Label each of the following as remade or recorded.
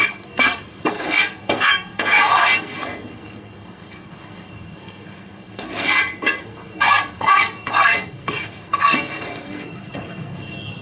remade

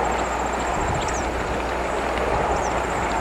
recorded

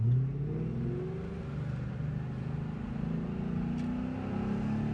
recorded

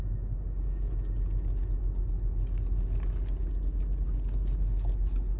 recorded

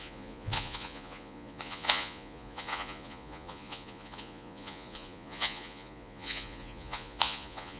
remade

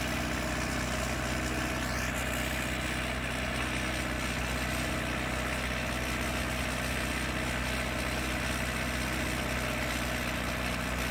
recorded